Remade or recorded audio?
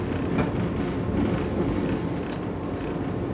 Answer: recorded